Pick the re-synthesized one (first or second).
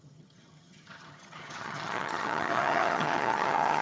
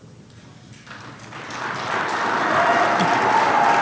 first